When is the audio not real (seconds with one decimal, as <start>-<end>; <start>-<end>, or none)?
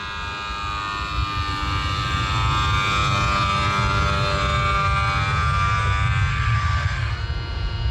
6.3-7.1